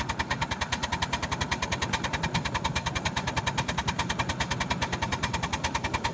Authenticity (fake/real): real